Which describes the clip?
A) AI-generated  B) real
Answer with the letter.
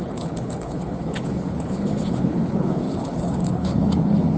A